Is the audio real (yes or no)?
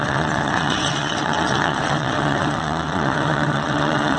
no